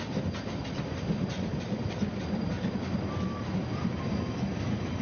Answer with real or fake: real